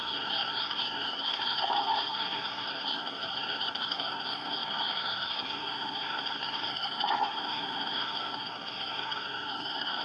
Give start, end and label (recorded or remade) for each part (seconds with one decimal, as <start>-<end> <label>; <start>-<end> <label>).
0.0-10.0 remade